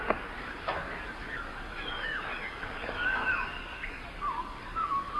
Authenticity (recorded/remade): remade